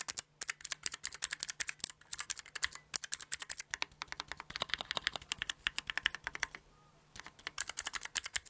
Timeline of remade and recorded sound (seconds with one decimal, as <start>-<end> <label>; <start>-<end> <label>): 0.0-8.5 recorded